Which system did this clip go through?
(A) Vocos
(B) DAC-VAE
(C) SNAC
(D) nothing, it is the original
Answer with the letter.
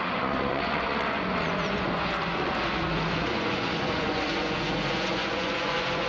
A